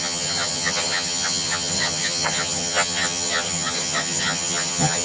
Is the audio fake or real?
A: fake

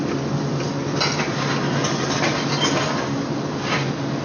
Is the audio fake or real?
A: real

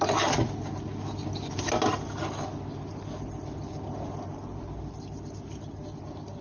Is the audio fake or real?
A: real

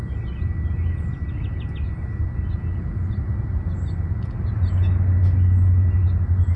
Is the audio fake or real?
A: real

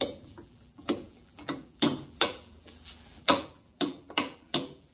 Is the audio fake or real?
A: fake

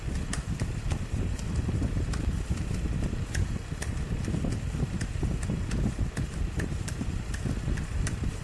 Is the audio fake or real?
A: real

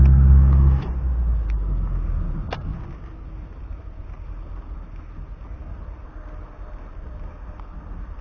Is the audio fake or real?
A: real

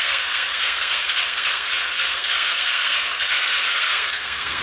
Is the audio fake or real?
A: fake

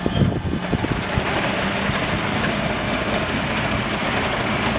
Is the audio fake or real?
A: real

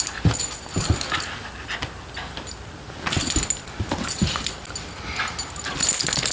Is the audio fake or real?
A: real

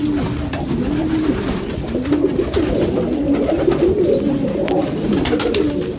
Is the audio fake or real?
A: real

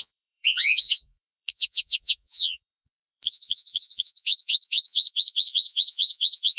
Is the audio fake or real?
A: fake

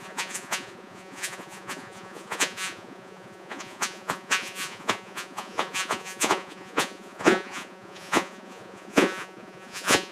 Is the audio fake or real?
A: fake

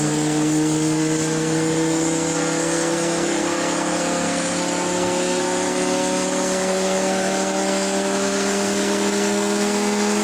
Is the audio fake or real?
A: fake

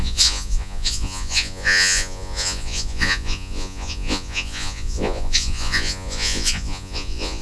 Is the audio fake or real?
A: fake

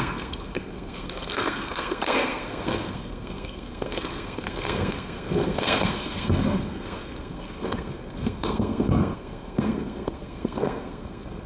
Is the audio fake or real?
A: fake